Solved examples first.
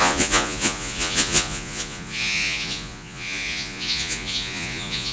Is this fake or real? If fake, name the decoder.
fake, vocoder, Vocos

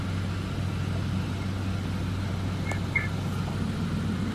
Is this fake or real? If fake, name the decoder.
real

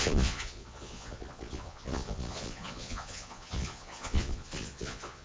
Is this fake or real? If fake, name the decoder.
fake, vocoder, Vocos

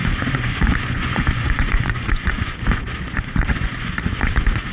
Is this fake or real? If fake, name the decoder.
fake, vocoder, Vocos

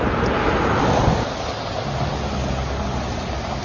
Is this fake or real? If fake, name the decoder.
real